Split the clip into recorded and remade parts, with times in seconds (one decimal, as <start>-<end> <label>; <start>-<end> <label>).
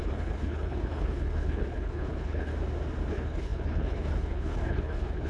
0.0-2.5 remade; 2.5-3.1 recorded; 3.1-5.3 remade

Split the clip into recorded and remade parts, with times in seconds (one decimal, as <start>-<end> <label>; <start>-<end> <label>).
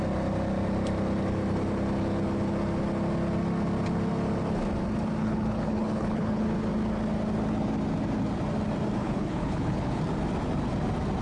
0.0-5.2 recorded; 5.2-6.4 remade; 6.4-9.0 recorded; 9.0-10.0 remade; 10.0-11.2 recorded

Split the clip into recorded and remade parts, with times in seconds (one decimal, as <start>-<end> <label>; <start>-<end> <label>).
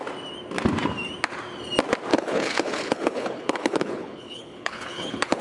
0.0-2.1 recorded; 2.1-5.4 remade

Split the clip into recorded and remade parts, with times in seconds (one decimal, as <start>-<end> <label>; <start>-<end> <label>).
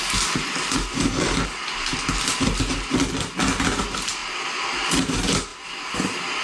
0.0-6.4 recorded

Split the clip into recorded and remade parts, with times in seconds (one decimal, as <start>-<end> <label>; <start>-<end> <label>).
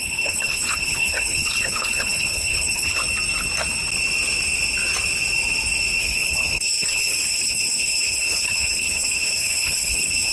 0.0-3.0 remade; 3.0-6.0 recorded; 6.0-10.3 remade